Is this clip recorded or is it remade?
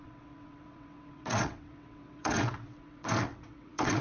remade